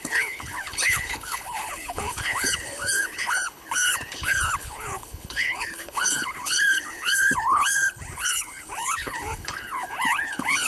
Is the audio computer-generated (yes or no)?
yes